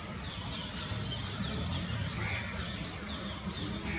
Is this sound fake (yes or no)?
no